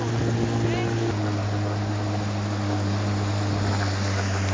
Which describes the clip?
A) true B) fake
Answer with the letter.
A